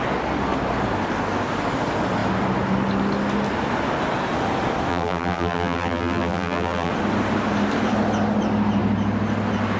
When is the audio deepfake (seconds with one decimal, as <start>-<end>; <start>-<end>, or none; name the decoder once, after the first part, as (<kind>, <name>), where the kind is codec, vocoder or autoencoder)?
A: 4.9-6.9 (vocoder, BigVGAN v2)